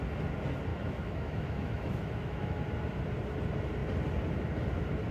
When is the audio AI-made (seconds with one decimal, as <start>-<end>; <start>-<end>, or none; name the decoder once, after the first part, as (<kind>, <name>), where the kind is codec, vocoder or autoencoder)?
0.7-2.6 (autoencoder, DAC-VAE)